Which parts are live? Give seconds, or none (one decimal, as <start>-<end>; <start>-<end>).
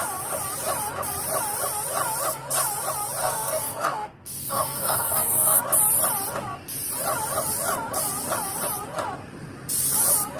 0.0-3.2; 5.6-10.4